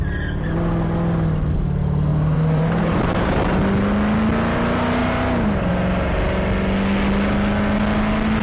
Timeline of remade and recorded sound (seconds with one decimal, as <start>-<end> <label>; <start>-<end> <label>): 0.0-2.1 recorded; 2.1-3.6 remade; 3.6-5.0 recorded; 5.0-5.7 remade; 5.7-8.4 recorded